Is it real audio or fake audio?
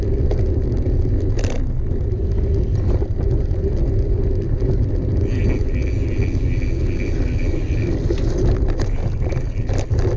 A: real